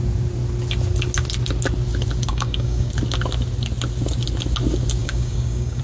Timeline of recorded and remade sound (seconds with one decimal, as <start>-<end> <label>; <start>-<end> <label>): 0.0-2.3 recorded; 2.3-2.9 remade; 2.9-5.0 recorded; 5.0-5.8 remade